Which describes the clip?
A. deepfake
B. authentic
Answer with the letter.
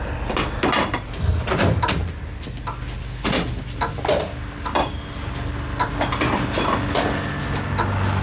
B